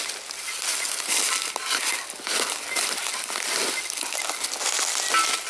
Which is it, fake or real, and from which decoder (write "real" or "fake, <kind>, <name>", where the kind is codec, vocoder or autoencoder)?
real